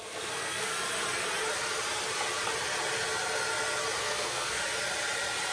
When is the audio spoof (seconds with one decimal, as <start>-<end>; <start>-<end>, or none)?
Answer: 0.0-0.7; 4.0-4.6